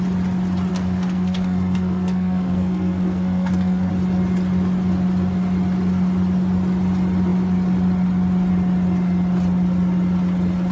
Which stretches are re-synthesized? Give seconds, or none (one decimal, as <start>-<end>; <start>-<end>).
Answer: 0.7-3.9